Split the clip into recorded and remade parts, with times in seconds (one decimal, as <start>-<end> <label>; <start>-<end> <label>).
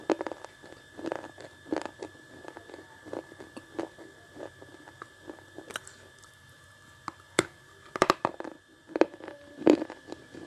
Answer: 0.0-10.5 recorded